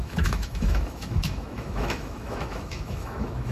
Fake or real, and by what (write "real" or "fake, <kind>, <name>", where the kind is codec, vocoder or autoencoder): fake, autoencoder, DAC-VAE